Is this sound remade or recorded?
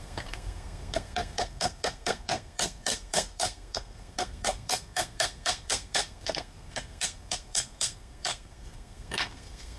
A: remade